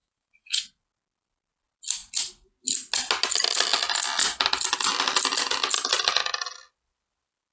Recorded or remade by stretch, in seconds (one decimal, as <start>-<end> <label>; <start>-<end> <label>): 0.0-0.7 remade; 0.7-7.5 recorded